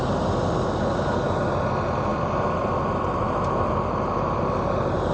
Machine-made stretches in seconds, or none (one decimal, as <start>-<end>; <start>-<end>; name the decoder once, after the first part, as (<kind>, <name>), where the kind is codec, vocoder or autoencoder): 2.1-3.7 (vocoder, BigVGAN v2)